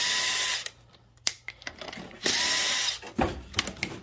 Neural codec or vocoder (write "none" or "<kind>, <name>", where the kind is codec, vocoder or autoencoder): none